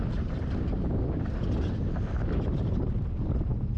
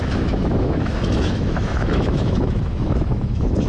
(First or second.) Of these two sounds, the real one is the first